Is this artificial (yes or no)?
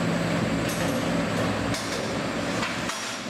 no